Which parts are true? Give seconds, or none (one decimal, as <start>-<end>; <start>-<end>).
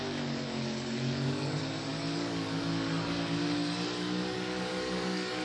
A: none